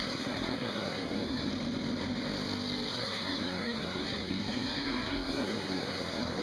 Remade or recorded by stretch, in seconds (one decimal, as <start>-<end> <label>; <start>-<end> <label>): 0.0-1.5 remade; 1.5-2.9 recorded; 2.9-6.4 remade